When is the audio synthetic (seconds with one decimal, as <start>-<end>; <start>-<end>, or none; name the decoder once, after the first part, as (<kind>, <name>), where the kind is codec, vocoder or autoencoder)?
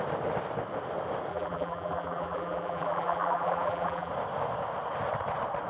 1.3-4.1 (vocoder, BigVGAN v2)